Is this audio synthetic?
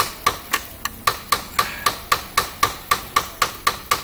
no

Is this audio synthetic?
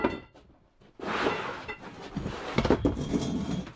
no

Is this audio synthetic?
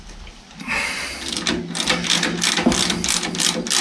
no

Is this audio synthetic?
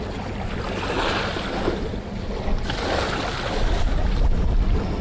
no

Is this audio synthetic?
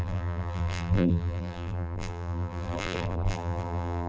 yes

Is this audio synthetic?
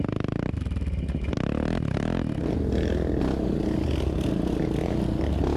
no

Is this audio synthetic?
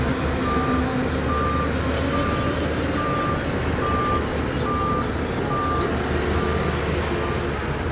no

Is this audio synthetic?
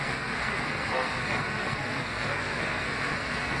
yes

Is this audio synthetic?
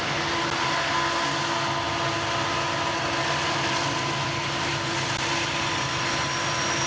no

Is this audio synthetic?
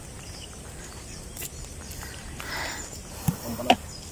no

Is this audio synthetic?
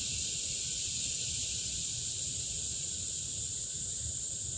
no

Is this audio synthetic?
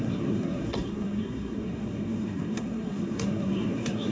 yes